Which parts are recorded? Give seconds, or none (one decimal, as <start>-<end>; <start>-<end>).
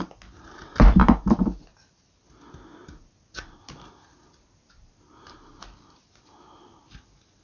0.0-7.4